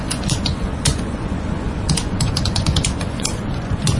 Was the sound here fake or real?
fake